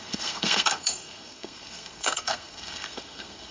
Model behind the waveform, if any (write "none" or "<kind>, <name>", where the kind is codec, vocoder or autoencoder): codec, SNAC